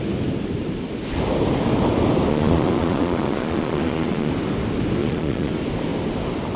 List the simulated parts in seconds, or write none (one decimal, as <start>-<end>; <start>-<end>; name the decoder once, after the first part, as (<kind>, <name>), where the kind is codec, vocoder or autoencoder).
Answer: 2.3-4.3 (vocoder, Vocos); 5.0-5.5